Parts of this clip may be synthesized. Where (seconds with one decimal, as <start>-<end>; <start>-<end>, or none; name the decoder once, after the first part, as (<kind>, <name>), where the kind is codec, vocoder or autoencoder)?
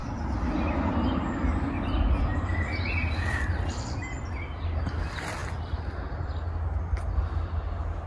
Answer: none